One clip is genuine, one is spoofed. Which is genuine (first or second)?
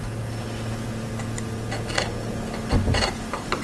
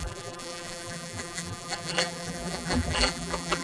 first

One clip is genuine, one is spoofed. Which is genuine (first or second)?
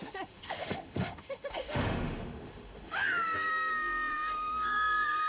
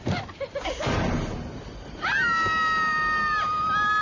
second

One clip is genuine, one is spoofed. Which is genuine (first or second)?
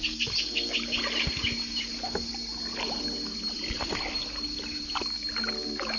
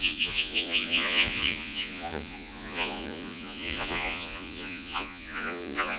first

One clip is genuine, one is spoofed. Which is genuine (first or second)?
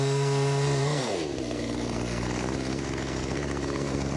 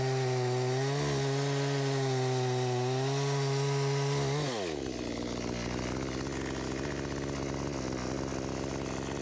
second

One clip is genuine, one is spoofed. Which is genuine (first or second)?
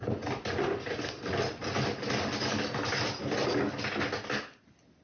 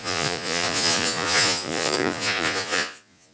first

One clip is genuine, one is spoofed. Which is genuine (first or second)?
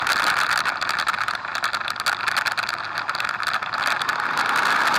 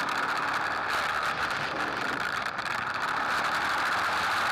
first